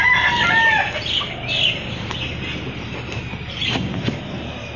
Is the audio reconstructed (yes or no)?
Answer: no